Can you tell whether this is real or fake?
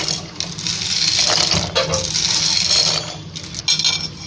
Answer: real